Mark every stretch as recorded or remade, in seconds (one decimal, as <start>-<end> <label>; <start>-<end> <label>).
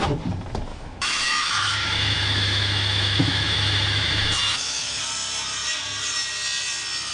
0.0-0.7 recorded; 0.7-5.0 remade; 5.0-7.1 recorded